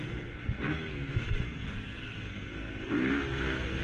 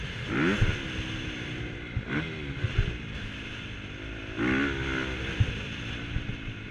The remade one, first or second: first